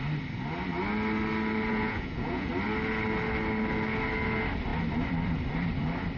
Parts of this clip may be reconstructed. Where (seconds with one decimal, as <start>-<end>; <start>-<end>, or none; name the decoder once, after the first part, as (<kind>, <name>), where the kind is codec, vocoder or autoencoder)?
1.7-2.5 (vocoder, Vocos)